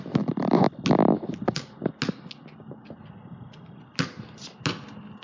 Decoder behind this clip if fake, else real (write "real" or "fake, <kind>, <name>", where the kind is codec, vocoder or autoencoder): real